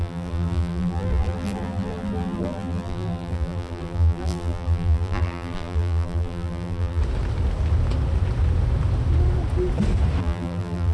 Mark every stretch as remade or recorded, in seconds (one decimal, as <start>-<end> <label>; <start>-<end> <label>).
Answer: 0.0-7.0 remade; 7.0-10.2 recorded; 10.2-10.9 remade